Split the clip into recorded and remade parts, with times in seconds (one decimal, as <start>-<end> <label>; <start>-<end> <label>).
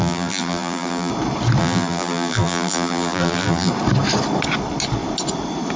0.0-1.1 remade; 1.1-1.6 recorded; 1.6-3.7 remade; 3.7-5.8 recorded